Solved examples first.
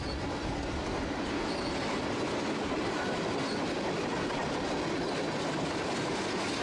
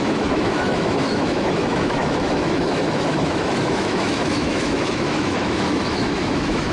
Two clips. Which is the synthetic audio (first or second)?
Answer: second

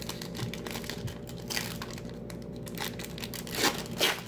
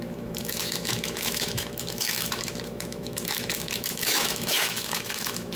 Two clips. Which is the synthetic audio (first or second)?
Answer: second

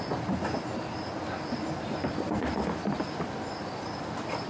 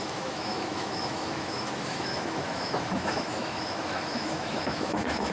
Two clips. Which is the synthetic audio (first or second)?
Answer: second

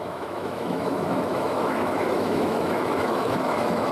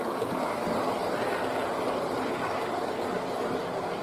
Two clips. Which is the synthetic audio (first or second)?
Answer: first